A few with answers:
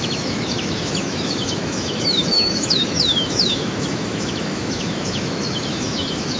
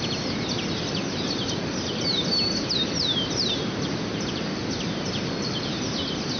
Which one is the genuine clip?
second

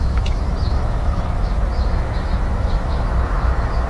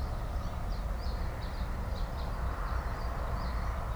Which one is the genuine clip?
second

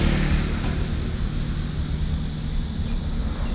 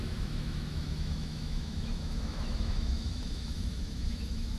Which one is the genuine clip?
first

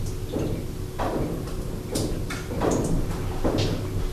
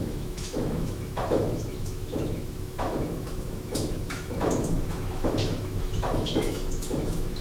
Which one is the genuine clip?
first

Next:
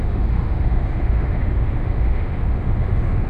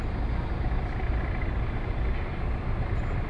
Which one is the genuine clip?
second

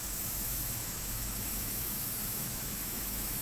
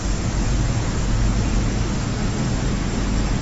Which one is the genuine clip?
second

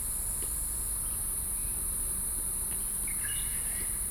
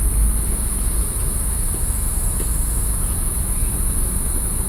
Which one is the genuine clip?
first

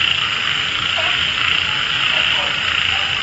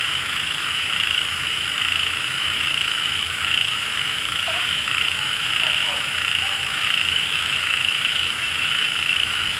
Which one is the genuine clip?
first